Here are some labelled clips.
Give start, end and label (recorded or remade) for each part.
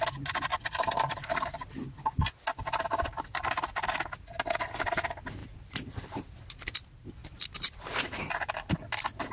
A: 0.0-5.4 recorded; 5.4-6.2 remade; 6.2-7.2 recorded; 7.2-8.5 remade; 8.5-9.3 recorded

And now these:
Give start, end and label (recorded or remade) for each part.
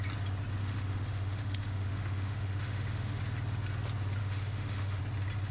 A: 0.0-0.6 recorded; 0.6-3.2 remade; 3.2-4.2 recorded; 4.2-5.0 remade; 5.0-5.5 recorded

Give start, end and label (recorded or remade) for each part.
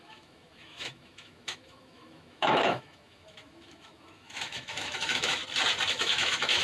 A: 0.0-5.4 remade; 5.4-5.9 recorded; 5.9-6.6 remade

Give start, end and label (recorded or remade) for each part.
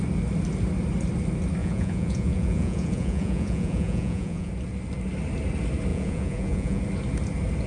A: 0.0-1.6 recorded; 1.6-4.5 remade; 4.5-5.9 recorded; 5.9-6.8 remade; 6.8-7.7 recorded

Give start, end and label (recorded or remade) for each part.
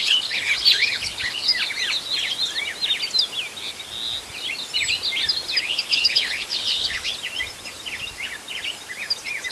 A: 0.0-1.5 remade; 1.5-5.6 recorded; 5.6-7.1 remade; 7.1-9.5 recorded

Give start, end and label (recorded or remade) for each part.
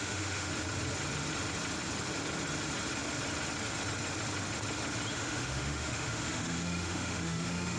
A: 0.0-0.5 remade; 0.5-5.1 recorded; 5.1-7.8 remade